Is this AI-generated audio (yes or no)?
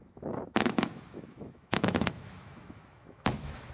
yes